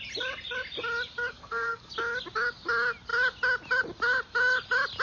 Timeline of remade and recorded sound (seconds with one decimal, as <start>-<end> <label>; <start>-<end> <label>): 0.0-1.3 recorded; 1.3-1.9 remade; 1.9-5.0 recorded